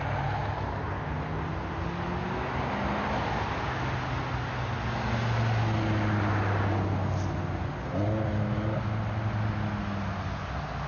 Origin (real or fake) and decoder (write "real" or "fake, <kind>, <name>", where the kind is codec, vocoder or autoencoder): real